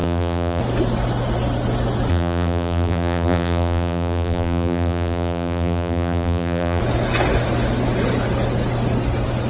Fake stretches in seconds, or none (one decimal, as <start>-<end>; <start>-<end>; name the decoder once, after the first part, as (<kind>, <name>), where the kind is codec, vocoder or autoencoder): 0.0-0.6 (vocoder, BigVGAN v2); 2.1-6.8